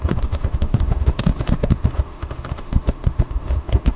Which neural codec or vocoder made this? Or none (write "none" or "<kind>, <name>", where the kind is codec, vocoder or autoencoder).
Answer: autoencoder, DAC-VAE